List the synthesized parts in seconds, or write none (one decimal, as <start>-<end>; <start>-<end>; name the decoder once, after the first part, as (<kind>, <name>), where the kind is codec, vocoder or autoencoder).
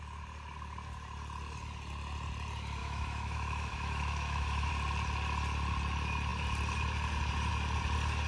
2.8-4.7 (autoencoder, DAC-VAE)